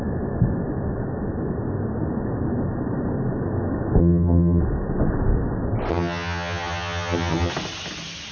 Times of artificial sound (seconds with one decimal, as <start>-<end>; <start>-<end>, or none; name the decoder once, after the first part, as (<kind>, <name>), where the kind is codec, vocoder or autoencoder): 4.0-4.6 (vocoder, HiFi-GAN); 5.9-7.5